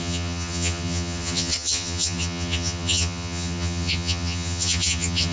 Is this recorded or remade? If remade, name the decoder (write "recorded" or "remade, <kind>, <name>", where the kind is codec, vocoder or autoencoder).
remade, vocoder, HiFi-GAN